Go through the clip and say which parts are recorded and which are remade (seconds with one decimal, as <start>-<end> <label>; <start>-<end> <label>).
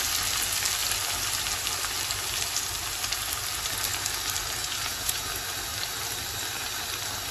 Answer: 0.0-4.6 recorded; 4.6-5.3 remade; 5.3-7.3 recorded